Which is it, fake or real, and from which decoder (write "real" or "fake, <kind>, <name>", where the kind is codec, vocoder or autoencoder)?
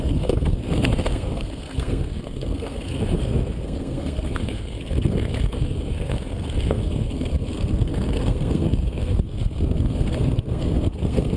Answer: fake, codec, SNAC